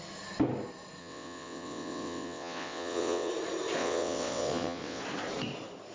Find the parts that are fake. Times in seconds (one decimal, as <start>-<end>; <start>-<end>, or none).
1.0-3.3; 3.8-5.0